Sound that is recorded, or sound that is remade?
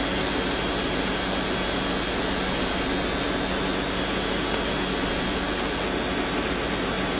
recorded